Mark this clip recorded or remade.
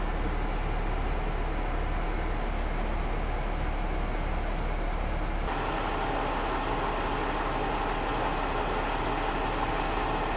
recorded